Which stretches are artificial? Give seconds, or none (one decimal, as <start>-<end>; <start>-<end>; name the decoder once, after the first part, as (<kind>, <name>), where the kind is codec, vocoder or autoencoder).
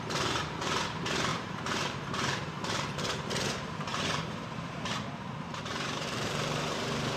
0.0-7.2 (vocoder, BigVGAN v2)